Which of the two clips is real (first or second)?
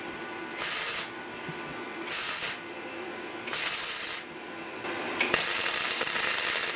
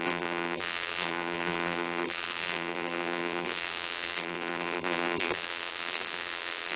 first